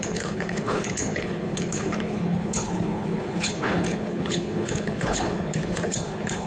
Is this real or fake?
fake